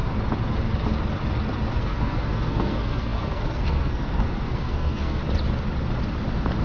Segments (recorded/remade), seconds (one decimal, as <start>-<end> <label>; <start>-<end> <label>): 0.0-1.8 recorded; 1.8-5.2 remade; 5.2-6.6 recorded